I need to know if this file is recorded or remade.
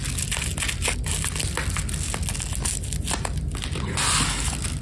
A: recorded